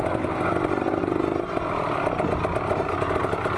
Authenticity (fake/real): real